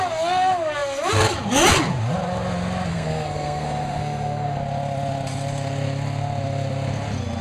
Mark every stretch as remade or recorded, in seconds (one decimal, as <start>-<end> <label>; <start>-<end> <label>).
0.0-2.9 recorded; 2.9-4.6 remade; 4.6-7.4 recorded